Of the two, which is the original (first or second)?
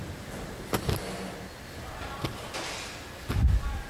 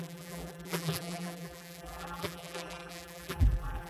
first